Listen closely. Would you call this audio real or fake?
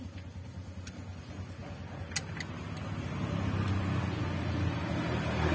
real